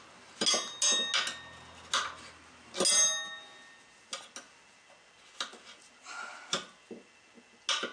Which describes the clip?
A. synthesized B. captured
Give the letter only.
B